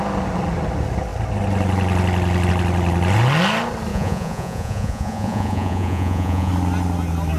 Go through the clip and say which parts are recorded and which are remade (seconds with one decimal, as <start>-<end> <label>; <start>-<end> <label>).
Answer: 0.0-3.9 recorded; 3.9-6.5 remade; 6.5-7.4 recorded